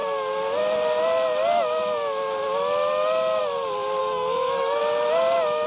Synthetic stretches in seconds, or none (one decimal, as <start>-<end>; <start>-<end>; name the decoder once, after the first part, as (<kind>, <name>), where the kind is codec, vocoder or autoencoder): 4.0-4.8 (autoencoder, DAC-VAE)